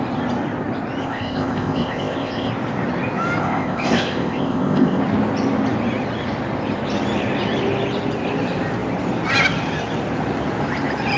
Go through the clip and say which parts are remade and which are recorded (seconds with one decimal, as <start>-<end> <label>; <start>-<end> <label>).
0.0-1.0 recorded; 1.0-2.5 remade; 2.5-3.4 recorded; 3.4-5.0 remade; 5.0-11.2 recorded